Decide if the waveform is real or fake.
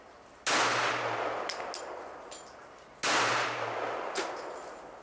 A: real